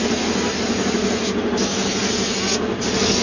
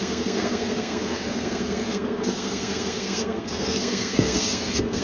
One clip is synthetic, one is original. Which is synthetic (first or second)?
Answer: second